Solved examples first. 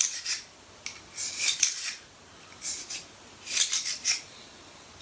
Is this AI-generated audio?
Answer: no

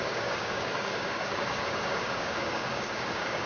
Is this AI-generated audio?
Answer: yes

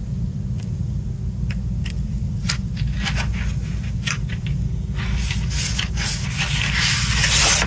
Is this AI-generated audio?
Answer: no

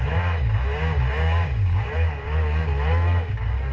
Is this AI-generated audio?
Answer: yes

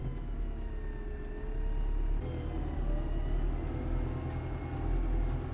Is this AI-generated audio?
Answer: no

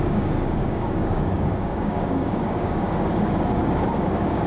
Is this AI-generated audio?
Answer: yes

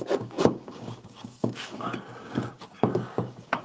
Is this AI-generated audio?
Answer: yes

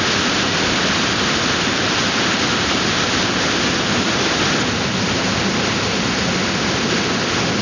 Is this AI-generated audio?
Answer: no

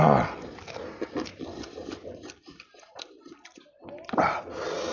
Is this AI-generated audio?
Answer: no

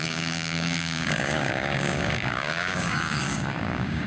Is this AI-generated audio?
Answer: yes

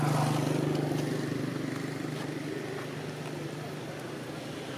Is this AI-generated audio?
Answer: no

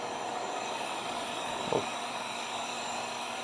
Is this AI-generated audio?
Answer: yes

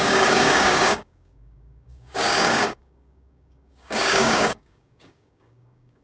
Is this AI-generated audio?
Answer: yes